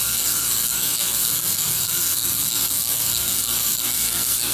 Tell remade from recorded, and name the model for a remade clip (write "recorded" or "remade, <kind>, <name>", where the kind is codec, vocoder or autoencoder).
remade, codec, SNAC